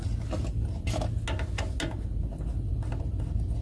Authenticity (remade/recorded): recorded